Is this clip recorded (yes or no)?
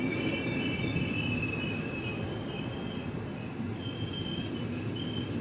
yes